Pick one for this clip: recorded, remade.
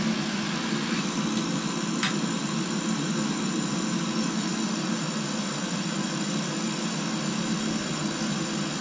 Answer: recorded